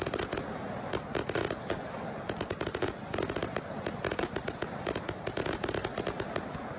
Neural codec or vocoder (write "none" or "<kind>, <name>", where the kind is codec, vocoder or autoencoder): none